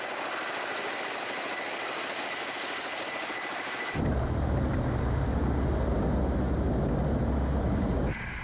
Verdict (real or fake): real